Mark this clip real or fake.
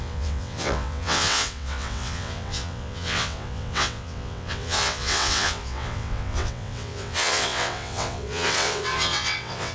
fake